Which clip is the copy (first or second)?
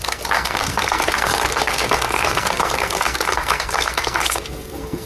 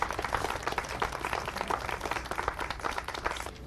first